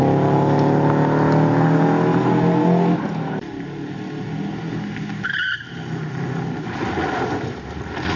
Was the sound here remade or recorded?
recorded